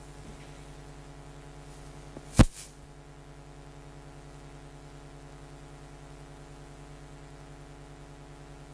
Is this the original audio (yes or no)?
yes